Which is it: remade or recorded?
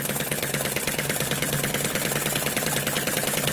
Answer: recorded